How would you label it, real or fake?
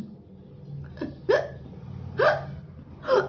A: real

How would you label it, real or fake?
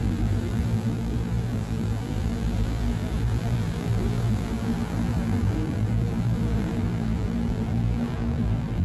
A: fake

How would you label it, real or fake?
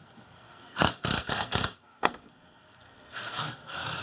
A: fake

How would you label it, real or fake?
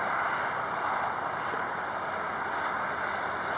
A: real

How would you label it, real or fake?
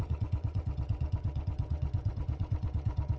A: fake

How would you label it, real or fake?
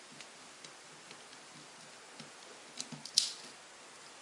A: fake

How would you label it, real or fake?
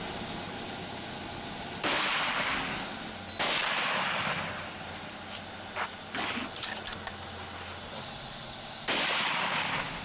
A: real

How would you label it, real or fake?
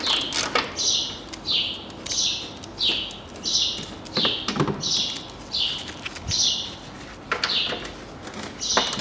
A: real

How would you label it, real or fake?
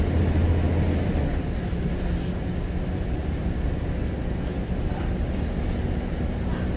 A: real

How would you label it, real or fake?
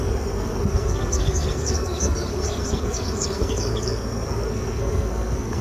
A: fake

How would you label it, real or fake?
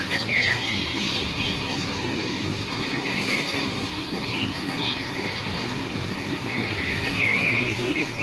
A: fake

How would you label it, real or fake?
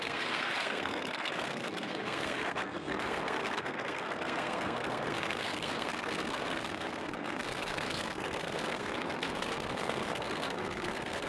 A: fake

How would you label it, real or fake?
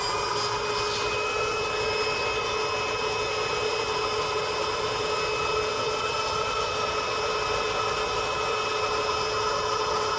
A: real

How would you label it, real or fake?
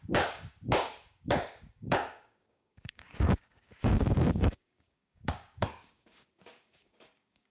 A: fake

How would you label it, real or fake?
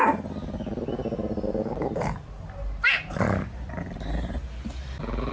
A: real